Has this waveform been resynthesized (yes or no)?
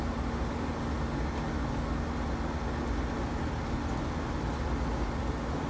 no